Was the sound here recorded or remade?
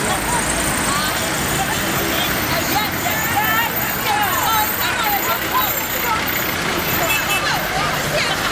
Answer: recorded